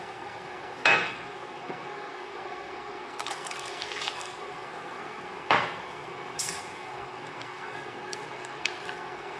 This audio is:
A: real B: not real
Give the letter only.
B